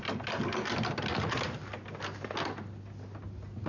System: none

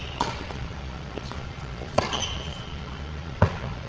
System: vocoder, Vocos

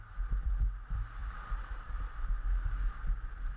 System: none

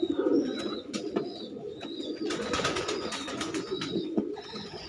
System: vocoder, Vocos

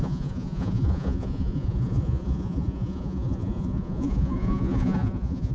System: vocoder, Vocos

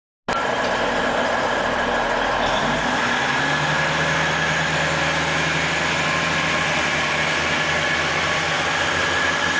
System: none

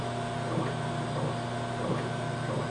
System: none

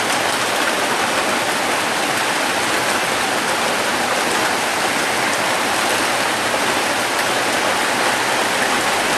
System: none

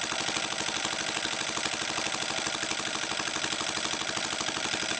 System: none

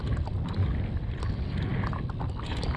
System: none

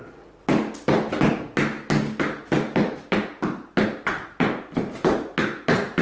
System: none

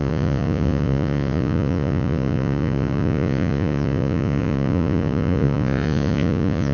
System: vocoder, Vocos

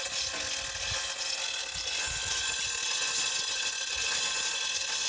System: vocoder, Vocos